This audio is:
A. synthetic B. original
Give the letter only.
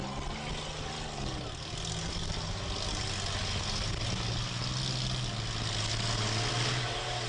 B